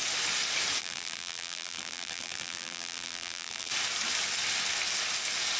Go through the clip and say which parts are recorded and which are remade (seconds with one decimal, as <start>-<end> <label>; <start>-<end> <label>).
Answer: 0.0-0.8 recorded; 0.8-3.7 remade; 3.7-5.6 recorded